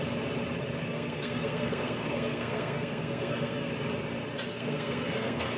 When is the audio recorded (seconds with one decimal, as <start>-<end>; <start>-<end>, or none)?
0.0-0.8; 3.7-4.5